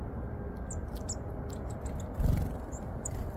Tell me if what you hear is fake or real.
real